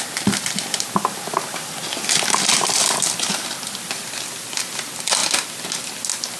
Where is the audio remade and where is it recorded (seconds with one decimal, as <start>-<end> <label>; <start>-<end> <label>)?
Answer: 0.0-6.4 recorded